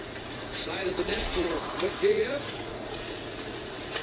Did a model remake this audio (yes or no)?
yes